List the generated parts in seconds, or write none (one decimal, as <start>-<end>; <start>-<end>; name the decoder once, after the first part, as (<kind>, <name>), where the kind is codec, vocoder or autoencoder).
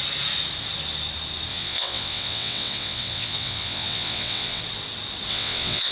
1.5-4.6 (vocoder, WaveNeXt); 5.3-5.9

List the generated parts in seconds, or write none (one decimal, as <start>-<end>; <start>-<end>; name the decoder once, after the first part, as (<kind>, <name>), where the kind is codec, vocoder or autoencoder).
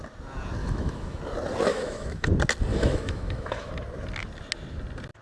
0.6-1.2 (autoencoder, DAC-VAE); 1.7-2.3; 2.7-3.7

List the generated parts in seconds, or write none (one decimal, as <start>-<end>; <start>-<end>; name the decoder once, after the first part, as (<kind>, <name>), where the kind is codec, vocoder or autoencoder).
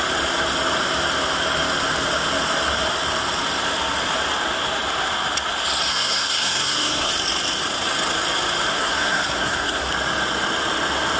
5.9-7.1 (codec, SNAC); 8.7-9.9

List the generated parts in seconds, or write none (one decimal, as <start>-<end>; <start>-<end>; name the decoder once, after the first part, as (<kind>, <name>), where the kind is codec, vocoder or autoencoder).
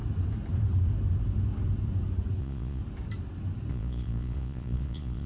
2.4-2.8 (vocoder, Vocos); 3.7-5.3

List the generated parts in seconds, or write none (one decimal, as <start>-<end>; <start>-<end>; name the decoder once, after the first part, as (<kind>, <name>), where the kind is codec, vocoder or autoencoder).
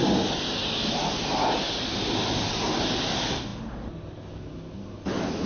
none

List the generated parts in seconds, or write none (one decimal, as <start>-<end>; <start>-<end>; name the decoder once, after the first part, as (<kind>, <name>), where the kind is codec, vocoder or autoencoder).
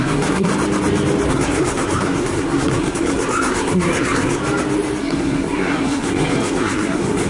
0.0-0.5 (codec, SNAC); 1.3-4.4; 5.0-7.3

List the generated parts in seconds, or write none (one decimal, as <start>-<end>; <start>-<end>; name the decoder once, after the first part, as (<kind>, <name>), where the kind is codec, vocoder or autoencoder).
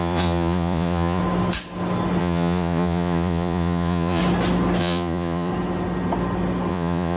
0.0-1.2 (vocoder, Vocos); 2.2-4.2; 4.8-5.5; 6.7-7.2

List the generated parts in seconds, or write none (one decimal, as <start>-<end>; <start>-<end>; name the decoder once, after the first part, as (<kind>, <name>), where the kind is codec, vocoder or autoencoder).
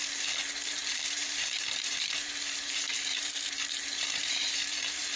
0.7-5.2 (vocoder, BigVGAN v2)